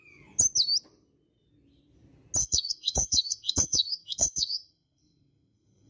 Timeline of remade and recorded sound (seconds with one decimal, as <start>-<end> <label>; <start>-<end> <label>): 0.0-2.4 recorded; 2.4-5.9 remade